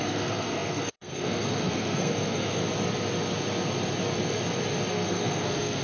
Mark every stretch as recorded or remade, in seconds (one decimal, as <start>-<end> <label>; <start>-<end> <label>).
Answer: 0.0-2.6 remade; 2.6-4.9 recorded; 4.9-5.8 remade